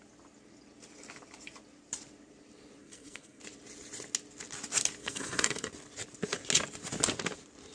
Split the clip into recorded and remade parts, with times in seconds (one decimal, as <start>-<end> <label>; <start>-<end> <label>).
0.0-2.8 recorded; 2.8-3.4 remade; 3.4-5.0 recorded; 5.0-5.7 remade; 5.7-7.7 recorded